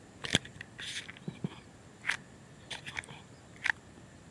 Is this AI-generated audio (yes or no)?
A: no